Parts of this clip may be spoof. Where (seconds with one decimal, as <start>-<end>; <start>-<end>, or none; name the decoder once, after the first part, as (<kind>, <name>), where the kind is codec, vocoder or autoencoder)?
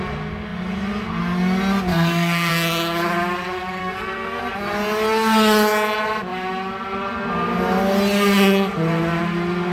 1.9-2.5 (codec, SNAC); 3.8-4.4